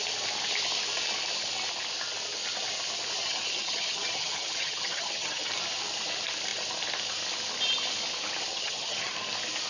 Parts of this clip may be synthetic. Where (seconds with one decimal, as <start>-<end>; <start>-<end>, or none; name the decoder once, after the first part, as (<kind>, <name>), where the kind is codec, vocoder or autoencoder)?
3.2-5.5 (vocoder, HiFi-GAN); 8.5-9.1